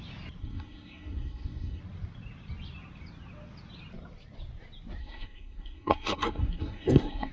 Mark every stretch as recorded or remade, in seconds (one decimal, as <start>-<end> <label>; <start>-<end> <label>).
0.0-0.4 recorded; 0.4-1.8 remade; 1.8-5.0 recorded; 5.0-7.3 remade